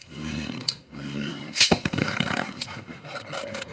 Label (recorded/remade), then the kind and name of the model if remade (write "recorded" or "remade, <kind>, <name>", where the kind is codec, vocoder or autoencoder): remade, codec, SNAC